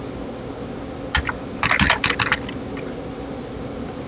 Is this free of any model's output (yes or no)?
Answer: yes